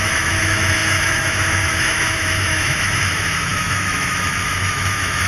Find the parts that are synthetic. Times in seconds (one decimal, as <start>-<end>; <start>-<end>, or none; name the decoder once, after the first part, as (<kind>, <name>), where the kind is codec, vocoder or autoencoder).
0.0-5.3 (autoencoder, DAC-VAE)